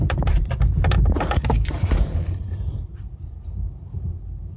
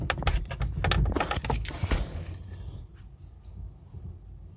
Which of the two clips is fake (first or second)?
first